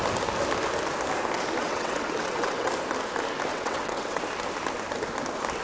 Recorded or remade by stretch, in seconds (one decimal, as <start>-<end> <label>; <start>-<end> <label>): 0.0-1.6 recorded; 1.6-2.7 remade; 2.7-3.5 recorded; 3.5-4.2 remade; 4.2-5.6 recorded